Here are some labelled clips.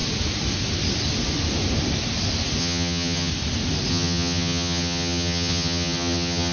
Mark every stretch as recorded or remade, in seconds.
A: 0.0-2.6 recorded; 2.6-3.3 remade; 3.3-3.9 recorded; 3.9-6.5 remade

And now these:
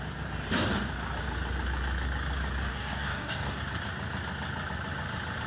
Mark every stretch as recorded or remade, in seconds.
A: 0.0-2.7 recorded; 2.7-3.6 remade; 3.6-5.5 recorded